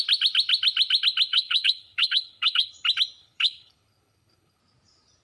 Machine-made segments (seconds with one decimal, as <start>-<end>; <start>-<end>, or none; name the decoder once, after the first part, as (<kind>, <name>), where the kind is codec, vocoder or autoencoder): 1.3-2.7 (codec, HILCodec); 3.2-4.6